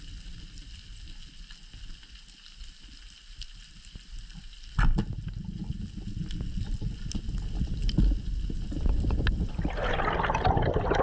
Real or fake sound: real